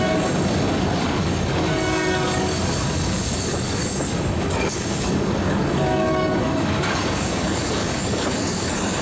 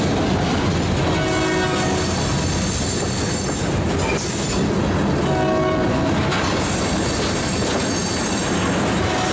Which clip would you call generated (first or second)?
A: first